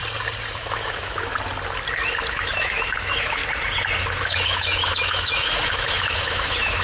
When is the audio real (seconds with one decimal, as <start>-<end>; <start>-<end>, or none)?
0.0-0.6; 1.3-2.3; 3.4-4.2